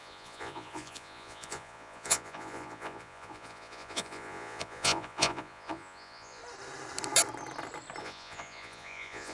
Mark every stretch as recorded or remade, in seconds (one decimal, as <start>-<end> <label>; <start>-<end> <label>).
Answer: 0.0-6.4 remade; 6.4-8.0 recorded; 8.0-9.3 remade